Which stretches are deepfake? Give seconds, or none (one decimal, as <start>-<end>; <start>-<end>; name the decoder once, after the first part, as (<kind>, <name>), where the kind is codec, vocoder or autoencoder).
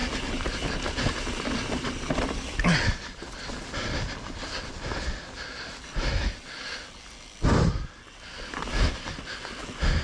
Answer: none